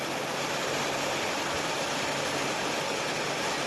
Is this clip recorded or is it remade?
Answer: recorded